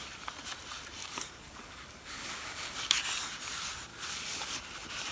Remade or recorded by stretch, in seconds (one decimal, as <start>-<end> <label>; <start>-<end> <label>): 0.0-1.0 recorded; 1.0-3.0 remade; 3.0-3.9 recorded; 3.9-4.6 remade; 4.6-5.1 recorded